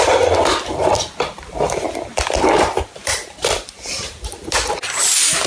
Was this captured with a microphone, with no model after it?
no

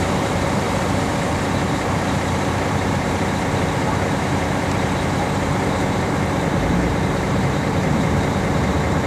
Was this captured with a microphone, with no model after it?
no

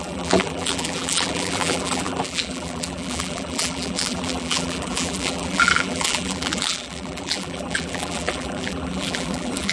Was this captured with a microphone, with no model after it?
no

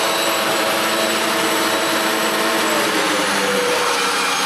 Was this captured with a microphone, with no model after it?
no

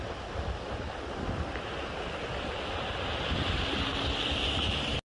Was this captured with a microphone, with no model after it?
yes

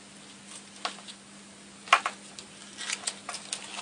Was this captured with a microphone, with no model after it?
yes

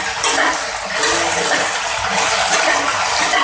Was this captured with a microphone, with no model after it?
yes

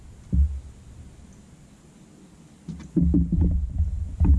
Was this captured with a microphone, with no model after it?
yes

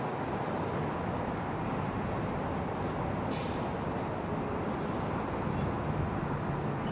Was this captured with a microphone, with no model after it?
yes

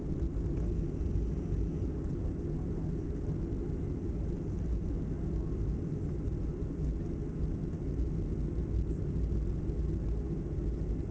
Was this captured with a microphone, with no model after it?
yes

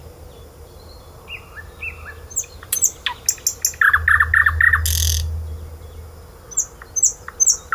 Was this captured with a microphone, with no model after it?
yes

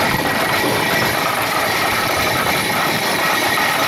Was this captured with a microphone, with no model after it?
no